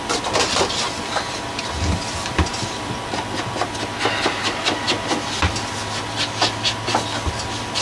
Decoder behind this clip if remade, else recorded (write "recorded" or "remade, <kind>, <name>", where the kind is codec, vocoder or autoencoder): recorded